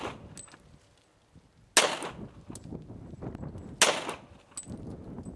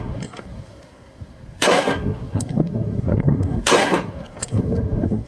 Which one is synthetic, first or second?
second